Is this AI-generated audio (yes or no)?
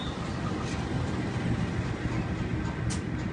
no